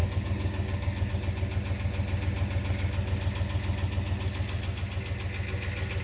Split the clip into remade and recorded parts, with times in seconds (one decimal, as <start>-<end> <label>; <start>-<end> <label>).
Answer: 0.0-1.1 remade; 1.1-6.0 recorded